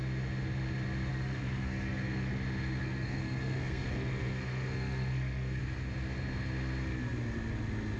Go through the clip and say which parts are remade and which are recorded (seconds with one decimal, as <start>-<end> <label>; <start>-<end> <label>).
0.0-1.1 recorded; 1.1-2.3 remade; 2.3-2.8 recorded; 2.8-5.6 remade; 5.6-8.0 recorded